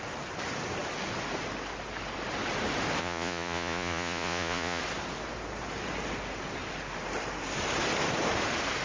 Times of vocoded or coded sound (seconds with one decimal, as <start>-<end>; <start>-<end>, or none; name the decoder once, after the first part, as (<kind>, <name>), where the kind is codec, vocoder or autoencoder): 3.0-4.8 (vocoder, Vocos)